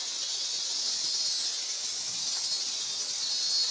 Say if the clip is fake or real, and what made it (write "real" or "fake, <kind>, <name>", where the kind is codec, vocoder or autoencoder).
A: real